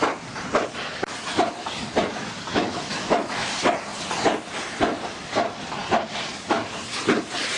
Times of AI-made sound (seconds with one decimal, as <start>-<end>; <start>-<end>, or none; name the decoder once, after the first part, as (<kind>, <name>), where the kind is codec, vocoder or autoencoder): 2.5-3.5 (autoencoder, DAC-VAE)